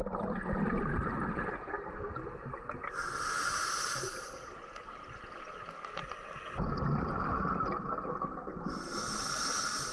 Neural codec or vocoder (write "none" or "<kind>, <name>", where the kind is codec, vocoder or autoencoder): none